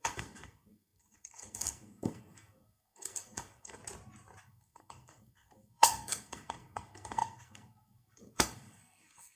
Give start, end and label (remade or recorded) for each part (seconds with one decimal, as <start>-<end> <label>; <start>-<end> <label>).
0.0-3.8 remade; 3.8-4.4 recorded; 4.4-9.4 remade